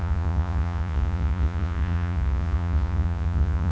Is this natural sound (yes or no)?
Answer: no